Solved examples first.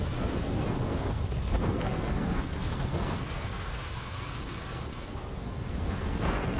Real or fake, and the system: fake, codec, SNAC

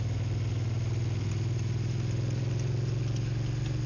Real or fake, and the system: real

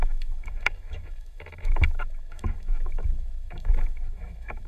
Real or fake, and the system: fake, autoencoder, DAC-VAE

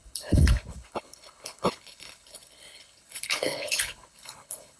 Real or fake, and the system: fake, codec, HILCodec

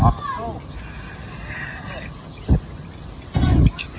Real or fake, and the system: real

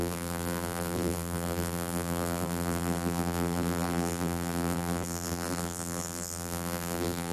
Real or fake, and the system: fake, vocoder, BigVGAN v2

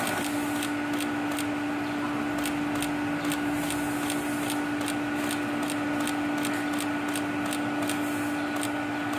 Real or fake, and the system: real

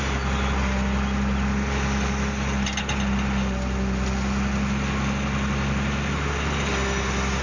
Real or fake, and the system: real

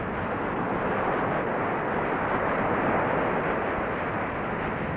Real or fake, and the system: real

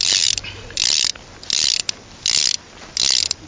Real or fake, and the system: real